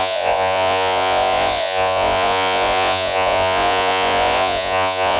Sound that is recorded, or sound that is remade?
remade